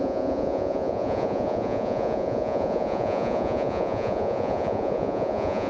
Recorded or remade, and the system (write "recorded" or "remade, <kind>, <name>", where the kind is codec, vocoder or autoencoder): remade, vocoder, Vocos